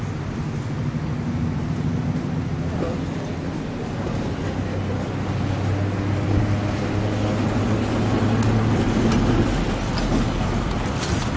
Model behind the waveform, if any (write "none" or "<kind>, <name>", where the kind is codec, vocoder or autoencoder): none